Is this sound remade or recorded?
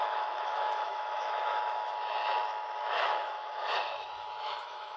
remade